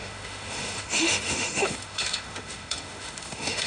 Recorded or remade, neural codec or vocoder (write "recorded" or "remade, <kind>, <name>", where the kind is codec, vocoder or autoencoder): remade, autoencoder, DAC-VAE